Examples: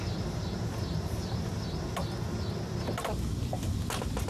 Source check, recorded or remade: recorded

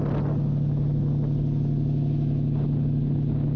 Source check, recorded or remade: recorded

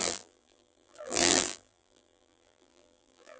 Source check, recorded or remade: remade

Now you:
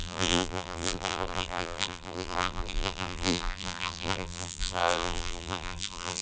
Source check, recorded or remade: remade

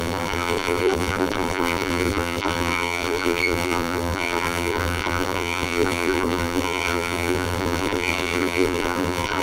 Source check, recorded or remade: remade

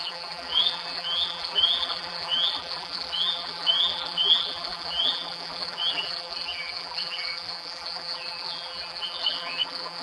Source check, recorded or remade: remade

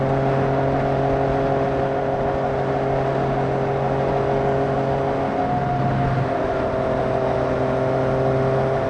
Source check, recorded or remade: recorded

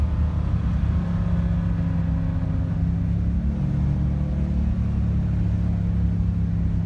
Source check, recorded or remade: recorded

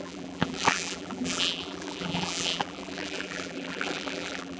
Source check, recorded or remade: remade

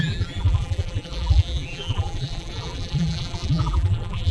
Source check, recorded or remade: remade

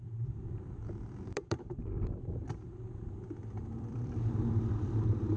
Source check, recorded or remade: remade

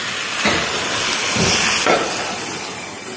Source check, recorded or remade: recorded